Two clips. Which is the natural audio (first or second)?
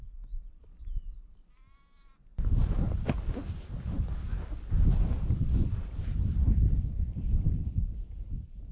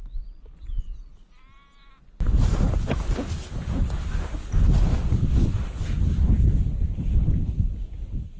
second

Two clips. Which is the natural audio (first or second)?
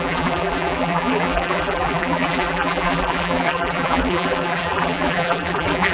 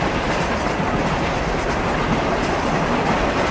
second